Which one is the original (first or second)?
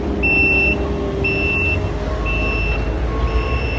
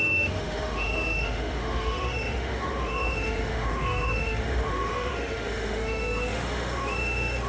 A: first